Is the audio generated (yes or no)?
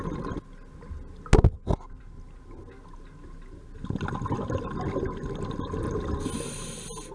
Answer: no